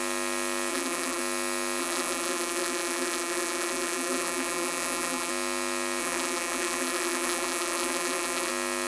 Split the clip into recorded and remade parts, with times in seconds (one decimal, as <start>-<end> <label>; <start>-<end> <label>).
0.0-0.7 recorded; 0.7-1.2 remade; 1.2-1.8 recorded; 1.8-5.3 remade; 5.3-6.0 recorded; 6.0-8.5 remade; 8.5-8.9 recorded